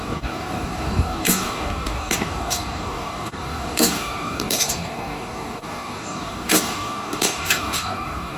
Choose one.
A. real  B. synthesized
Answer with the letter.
B